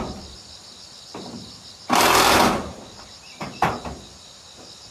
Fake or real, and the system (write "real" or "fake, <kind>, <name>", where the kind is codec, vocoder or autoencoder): real